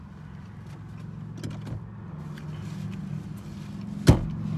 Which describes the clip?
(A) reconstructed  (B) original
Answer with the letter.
B